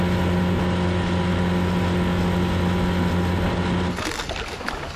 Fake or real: real